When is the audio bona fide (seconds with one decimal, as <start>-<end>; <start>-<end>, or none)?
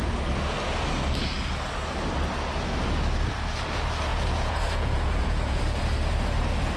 0.0-4.1; 5.8-6.8